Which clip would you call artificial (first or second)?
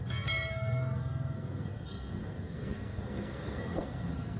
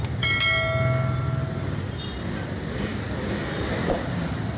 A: first